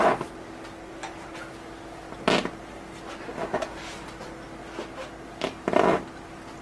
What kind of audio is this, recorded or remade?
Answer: recorded